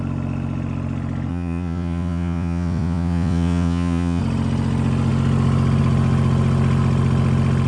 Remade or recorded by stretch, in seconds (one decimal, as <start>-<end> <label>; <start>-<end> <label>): 0.0-1.3 recorded; 1.3-4.2 remade; 4.2-7.7 recorded